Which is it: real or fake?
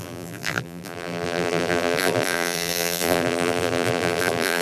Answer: fake